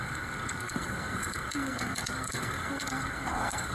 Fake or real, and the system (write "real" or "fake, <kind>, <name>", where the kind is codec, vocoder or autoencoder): fake, codec, SNAC